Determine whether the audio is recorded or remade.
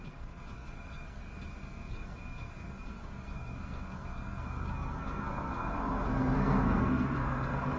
remade